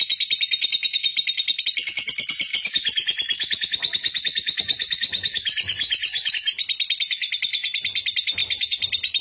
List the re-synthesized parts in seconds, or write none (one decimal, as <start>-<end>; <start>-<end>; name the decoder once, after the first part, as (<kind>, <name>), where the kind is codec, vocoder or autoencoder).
1.1-1.6 (vocoder, BigVGAN v2); 2.5-6.3